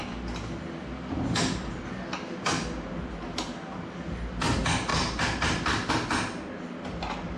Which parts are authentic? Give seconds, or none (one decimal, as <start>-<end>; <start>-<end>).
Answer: 0.0-4.9; 5.9-7.4